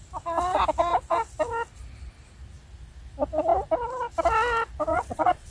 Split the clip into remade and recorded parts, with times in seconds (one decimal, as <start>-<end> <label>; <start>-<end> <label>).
0.0-4.9 recorded; 4.9-5.5 remade